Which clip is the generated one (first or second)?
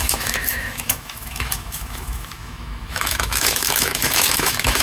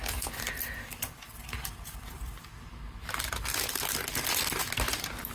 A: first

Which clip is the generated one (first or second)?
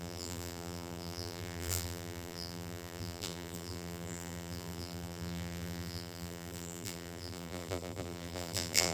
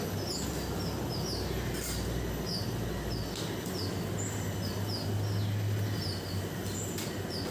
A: first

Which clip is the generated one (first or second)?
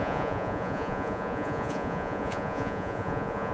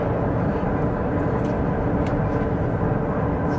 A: first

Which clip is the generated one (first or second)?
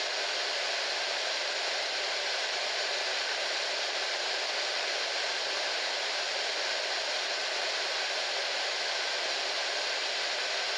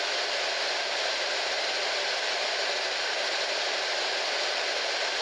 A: first